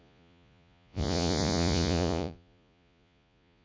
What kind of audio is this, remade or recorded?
remade